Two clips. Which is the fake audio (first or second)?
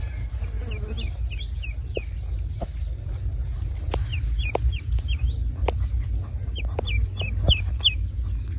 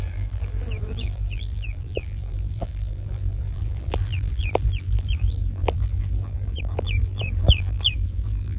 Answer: second